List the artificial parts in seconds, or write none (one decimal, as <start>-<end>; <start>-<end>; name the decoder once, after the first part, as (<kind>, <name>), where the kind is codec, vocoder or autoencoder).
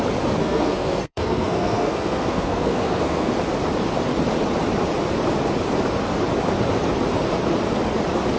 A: 0.4-3.3 (codec, SNAC)